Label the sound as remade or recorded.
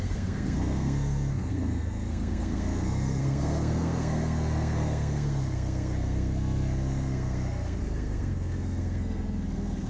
remade